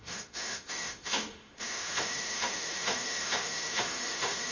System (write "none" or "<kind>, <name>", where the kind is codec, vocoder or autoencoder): autoencoder, DAC-VAE